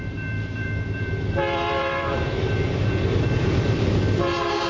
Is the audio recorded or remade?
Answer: remade